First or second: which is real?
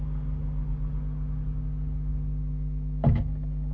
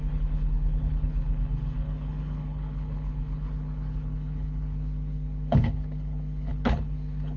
first